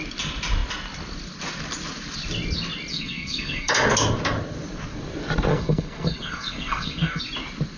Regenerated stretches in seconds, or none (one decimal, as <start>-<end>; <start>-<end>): 2.9-3.7; 5.5-7.2